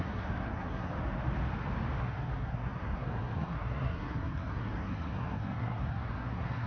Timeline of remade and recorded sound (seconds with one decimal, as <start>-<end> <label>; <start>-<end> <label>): 0.0-0.9 remade; 0.9-2.0 recorded; 2.0-6.7 remade